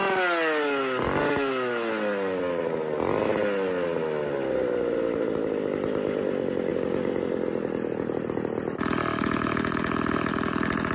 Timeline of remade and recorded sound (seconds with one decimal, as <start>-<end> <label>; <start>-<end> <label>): 0.0-10.9 recorded